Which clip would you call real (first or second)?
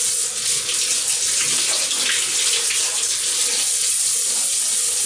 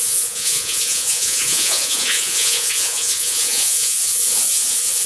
first